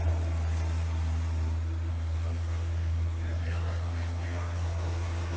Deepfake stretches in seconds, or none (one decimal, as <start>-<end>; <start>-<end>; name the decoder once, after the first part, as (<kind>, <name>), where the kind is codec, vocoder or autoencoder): 1.9-5.4 (codec, SNAC)